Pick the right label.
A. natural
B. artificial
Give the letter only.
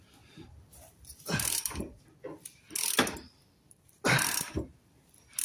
B